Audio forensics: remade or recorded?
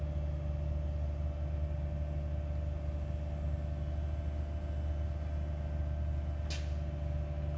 recorded